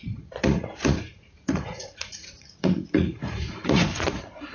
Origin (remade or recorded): remade